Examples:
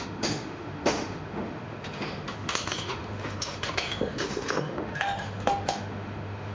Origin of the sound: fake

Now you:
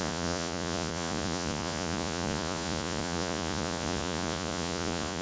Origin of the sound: fake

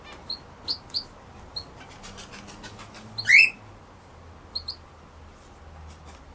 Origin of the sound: real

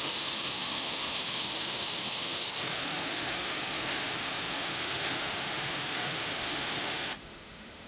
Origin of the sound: fake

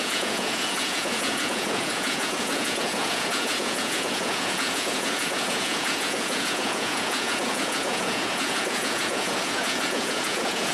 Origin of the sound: fake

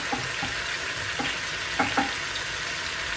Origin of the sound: real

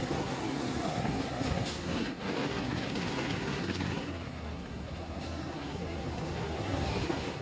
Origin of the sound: fake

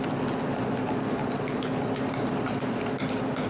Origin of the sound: real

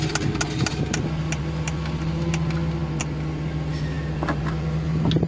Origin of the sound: real